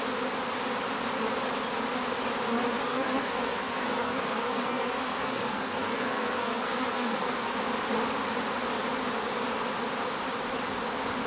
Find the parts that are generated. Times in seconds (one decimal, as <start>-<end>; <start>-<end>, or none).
2.8-7.6

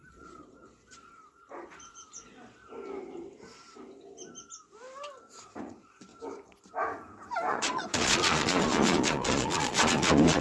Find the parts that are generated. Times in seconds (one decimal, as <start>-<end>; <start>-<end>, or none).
0.0-2.6; 5.6-6.1; 7.5-10.4

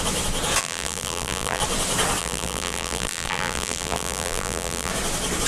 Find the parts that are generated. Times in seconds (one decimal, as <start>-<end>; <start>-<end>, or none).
0.6-1.6; 2.2-4.9

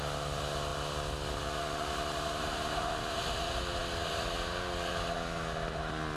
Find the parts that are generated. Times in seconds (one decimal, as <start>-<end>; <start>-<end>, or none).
none

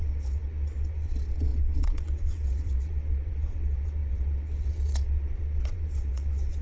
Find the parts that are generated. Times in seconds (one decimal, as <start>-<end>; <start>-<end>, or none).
0.0-6.6

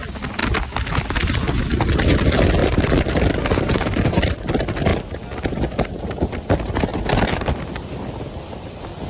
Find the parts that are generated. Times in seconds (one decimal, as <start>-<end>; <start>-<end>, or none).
2.6-4.3; 6.9-7.7